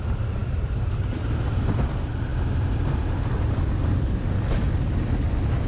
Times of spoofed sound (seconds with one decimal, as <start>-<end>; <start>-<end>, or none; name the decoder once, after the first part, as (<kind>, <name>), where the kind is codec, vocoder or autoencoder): none